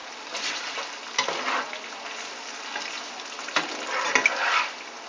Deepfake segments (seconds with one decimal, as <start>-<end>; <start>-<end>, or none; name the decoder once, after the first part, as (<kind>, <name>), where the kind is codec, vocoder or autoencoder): none